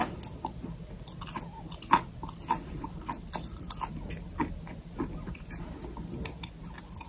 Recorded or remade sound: recorded